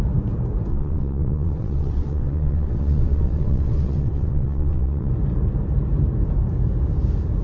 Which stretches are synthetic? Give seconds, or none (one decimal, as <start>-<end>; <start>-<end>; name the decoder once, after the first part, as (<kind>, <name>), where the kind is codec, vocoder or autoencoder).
0.7-5.1 (vocoder, WaveNeXt)